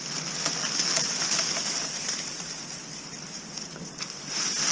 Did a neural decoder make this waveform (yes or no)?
no